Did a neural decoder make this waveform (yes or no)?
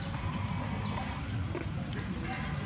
no